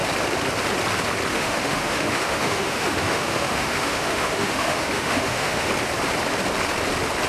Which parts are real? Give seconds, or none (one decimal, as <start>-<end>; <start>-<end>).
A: 0.0-1.3; 5.7-7.3